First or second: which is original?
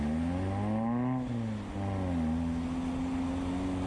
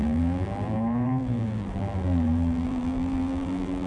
first